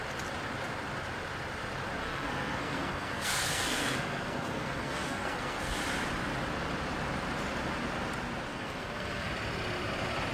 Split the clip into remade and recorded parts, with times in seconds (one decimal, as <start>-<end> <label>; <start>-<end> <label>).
0.0-2.0 recorded; 2.0-5.7 remade; 5.7-8.5 recorded; 8.5-9.3 remade; 9.3-10.3 recorded